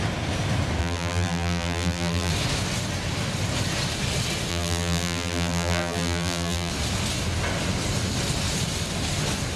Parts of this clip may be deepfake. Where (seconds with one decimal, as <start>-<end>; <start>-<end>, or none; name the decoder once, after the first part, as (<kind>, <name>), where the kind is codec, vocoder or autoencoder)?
0.8-2.3 (vocoder, BigVGAN v2); 4.5-6.7